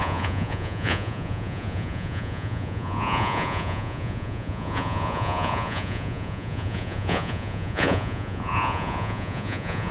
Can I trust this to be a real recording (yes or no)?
no